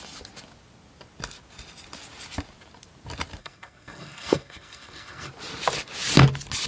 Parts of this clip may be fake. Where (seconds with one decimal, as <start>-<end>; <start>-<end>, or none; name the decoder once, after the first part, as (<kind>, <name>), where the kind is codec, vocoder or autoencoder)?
3.4-5.3 (codec, SNAC)